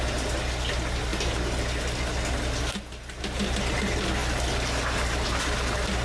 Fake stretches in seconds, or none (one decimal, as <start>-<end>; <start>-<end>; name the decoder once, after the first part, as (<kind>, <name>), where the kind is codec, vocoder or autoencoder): none